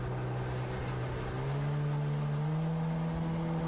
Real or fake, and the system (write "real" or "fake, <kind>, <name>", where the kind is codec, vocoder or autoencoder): real